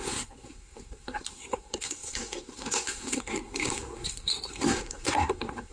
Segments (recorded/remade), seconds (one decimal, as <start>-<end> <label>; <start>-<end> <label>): 0.0-5.7 remade

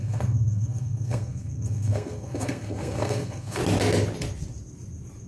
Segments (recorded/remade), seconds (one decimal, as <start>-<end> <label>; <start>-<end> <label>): 0.0-3.6 remade; 3.6-5.3 recorded

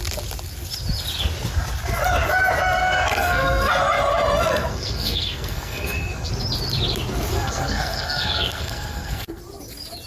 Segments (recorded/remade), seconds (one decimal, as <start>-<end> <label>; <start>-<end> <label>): 0.0-2.8 recorded; 2.8-3.7 remade; 3.7-4.5 recorded; 4.5-6.3 remade; 6.3-7.3 recorded; 7.3-9.4 remade; 9.4-10.1 recorded